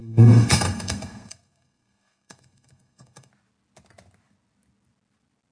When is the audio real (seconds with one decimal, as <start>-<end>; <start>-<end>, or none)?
3.3-5.5

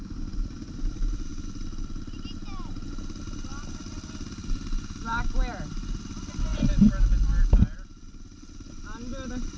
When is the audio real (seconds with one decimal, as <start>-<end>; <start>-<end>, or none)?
0.0-9.6

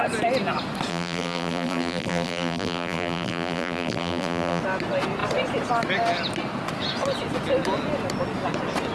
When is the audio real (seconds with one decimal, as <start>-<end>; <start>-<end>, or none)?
0.0-0.9; 4.6-8.9

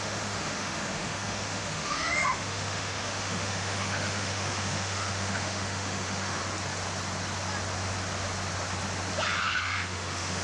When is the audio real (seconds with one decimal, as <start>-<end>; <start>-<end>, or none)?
6.4-9.4

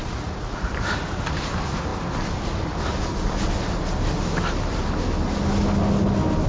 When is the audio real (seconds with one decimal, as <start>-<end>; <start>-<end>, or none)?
0.7-6.5

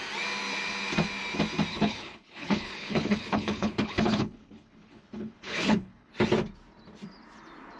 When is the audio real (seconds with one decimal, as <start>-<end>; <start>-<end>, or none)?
0.0-1.7; 6.1-7.8

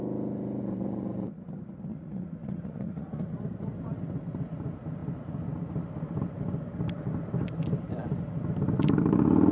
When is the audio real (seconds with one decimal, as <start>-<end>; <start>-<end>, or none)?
0.0-1.9; 3.3-9.5

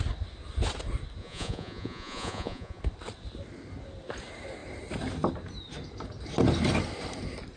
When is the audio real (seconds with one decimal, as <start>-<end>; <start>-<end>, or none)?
0.0-1.2; 2.8-7.6